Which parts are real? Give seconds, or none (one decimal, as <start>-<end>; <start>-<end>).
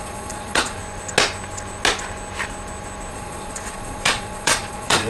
0.8-3.1